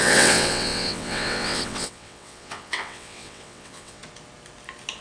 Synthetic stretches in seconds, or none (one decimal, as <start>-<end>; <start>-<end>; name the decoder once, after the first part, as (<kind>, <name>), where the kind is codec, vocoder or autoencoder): 0.0-4.0 (vocoder, WaveNeXt)

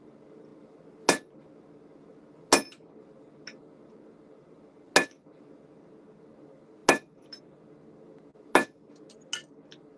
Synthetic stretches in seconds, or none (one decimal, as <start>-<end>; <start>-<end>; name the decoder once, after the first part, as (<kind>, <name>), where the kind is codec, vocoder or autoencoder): none

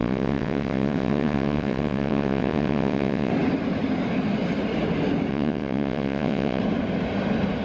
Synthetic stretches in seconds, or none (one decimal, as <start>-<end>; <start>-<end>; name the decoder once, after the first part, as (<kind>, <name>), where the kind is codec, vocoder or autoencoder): 0.0-3.3 (vocoder, WaveNeXt); 5.3-6.6

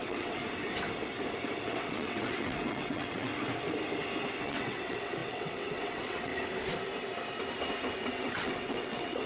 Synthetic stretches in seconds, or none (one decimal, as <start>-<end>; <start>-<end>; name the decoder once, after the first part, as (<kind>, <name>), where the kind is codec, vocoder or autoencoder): 0.0-0.4 (vocoder, WaveNeXt); 1.6-3.3; 4.4-6.3; 8.1-9.3